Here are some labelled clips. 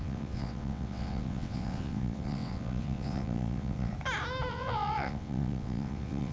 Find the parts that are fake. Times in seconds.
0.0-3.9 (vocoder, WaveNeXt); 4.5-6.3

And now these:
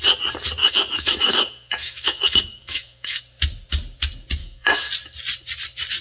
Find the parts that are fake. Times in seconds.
0.6-3.2 (autoencoder, DAC-VAE); 4.4-4.9

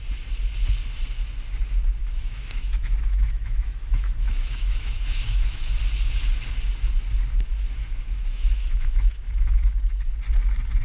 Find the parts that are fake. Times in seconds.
2.0-5.8 (autoencoder, DAC-VAE); 7.8-9.8

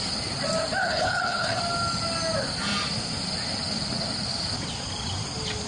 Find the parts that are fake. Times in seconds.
0.8-1.6 (codec, HILCodec)